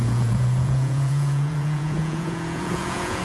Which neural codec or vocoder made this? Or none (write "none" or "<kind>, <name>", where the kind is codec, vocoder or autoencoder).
vocoder, Vocos